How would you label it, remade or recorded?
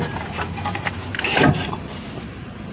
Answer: remade